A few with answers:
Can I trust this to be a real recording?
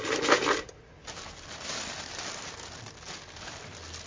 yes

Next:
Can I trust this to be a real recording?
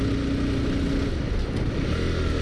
yes